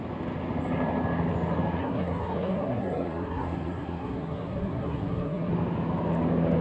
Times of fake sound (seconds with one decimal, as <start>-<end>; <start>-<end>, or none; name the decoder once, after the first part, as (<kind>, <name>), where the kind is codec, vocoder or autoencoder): 1.8-5.5 (codec, SNAC)